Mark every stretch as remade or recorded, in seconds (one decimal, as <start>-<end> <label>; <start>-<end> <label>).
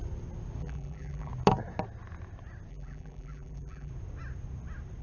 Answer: 0.0-0.6 recorded; 0.6-1.3 remade; 1.3-2.7 recorded; 2.7-3.9 remade; 3.9-5.0 recorded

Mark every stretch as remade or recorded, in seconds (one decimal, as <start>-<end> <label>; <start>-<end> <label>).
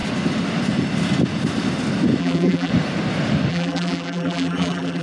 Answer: 0.0-2.2 recorded; 2.2-2.7 remade; 2.7-3.5 recorded; 3.5-5.0 remade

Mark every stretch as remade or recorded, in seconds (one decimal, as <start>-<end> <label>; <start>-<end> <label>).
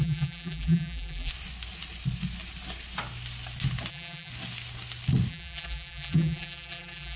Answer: 0.0-1.3 remade; 1.3-3.9 recorded; 3.9-4.3 remade; 4.3-5.3 recorded; 5.3-7.2 remade